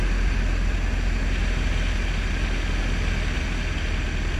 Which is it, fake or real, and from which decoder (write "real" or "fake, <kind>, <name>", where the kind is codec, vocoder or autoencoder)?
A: real